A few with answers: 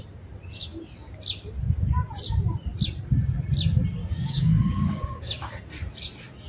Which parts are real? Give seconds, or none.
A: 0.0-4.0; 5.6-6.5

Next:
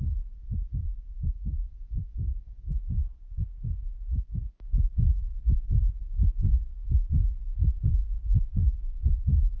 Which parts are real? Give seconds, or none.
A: 0.0-2.0; 3.0-3.5; 6.7-9.6

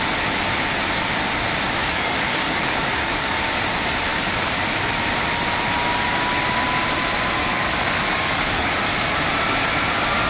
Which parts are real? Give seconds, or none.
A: 0.0-1.8; 3.4-7.5; 8.7-10.3

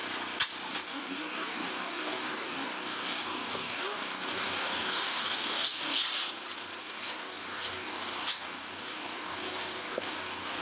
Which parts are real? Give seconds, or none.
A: 0.0-0.7; 6.0-6.8

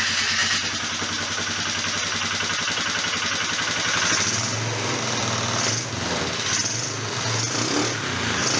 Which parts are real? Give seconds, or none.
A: 0.0-8.6